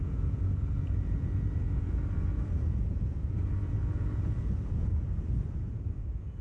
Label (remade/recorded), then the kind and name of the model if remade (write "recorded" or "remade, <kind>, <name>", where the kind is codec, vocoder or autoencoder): remade, vocoder, Vocos